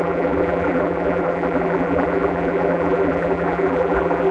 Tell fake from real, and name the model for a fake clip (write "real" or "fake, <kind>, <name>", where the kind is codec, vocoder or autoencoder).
fake, vocoder, BigVGAN v2